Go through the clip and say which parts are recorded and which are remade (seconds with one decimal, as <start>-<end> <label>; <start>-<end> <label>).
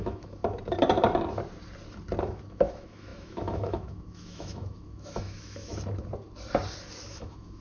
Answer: 0.0-0.4 remade; 0.4-2.2 recorded; 2.2-5.7 remade; 5.7-7.1 recorded; 7.1-7.6 remade